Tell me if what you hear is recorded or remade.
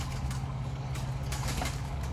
remade